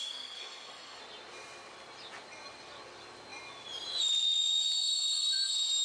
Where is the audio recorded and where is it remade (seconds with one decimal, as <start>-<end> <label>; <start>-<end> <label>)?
0.0-1.0 remade; 1.0-5.8 recorded